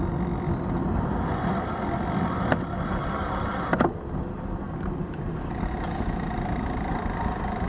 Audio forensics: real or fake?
real